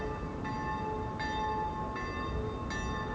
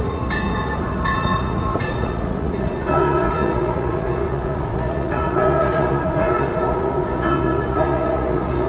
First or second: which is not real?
second